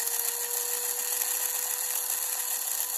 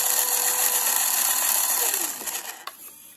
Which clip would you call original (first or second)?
first